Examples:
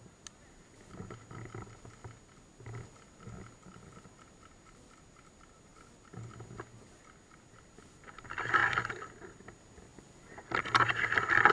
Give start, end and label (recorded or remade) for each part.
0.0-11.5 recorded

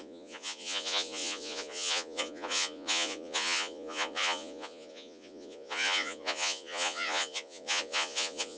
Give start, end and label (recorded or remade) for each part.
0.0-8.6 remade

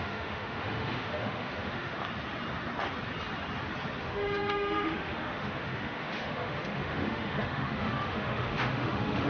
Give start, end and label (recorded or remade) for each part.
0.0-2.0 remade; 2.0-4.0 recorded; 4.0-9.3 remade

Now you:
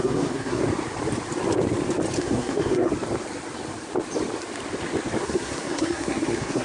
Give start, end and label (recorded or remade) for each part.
0.0-0.6 remade; 0.6-2.2 recorded; 2.2-2.9 remade; 2.9-5.2 recorded; 5.2-6.6 remade